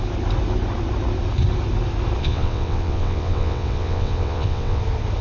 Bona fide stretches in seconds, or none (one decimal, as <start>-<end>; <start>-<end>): 0.0-2.2; 4.8-5.2